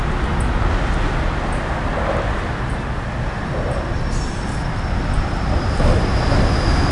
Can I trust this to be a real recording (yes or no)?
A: yes